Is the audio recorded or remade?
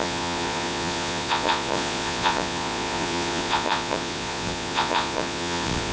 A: remade